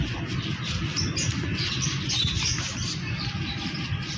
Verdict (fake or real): real